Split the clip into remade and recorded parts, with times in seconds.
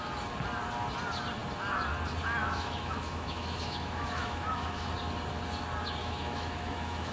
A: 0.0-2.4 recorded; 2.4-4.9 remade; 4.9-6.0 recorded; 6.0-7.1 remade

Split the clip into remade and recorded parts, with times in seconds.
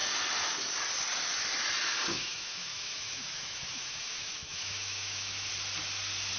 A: 0.0-2.1 recorded; 2.1-5.5 remade; 5.5-6.4 recorded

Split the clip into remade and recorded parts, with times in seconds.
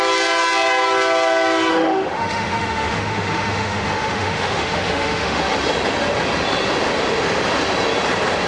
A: 0.0-1.7 recorded; 1.7-5.4 remade; 5.4-8.5 recorded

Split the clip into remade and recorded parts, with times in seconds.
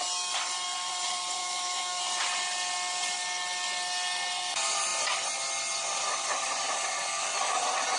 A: 0.0-1.4 recorded; 1.4-2.0 remade; 2.0-8.0 recorded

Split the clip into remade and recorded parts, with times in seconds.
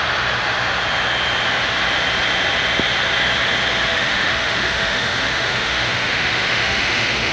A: 0.0-3.9 recorded; 3.9-7.3 remade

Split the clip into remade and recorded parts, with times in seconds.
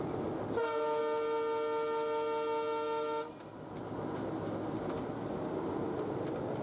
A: 0.0-6.6 recorded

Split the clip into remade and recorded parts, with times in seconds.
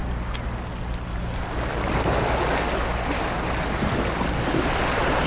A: 0.0-5.3 recorded